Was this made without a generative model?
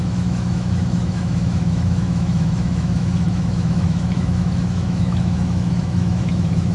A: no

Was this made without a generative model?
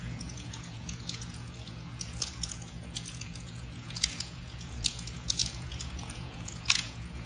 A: no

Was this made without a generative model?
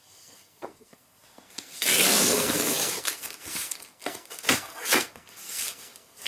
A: no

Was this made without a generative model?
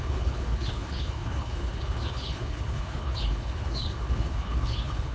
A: no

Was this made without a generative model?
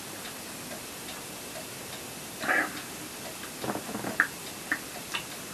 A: yes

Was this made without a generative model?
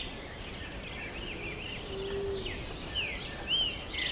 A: yes